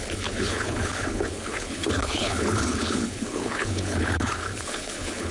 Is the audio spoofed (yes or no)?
yes